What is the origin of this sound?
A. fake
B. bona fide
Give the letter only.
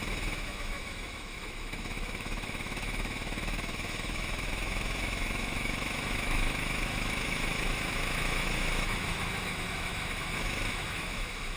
A